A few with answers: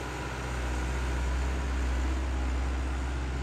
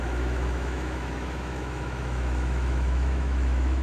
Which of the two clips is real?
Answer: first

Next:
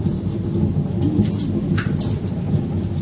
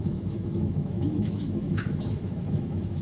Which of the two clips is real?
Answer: first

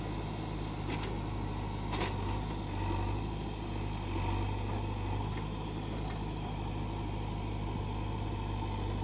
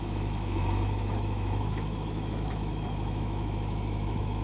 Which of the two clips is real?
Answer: first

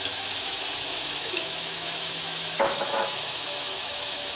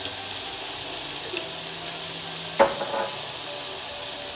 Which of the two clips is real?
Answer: second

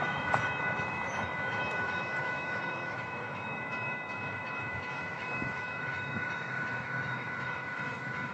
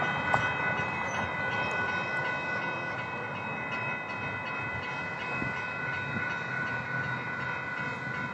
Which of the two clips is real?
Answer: second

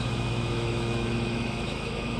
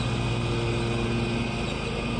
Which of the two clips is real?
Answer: second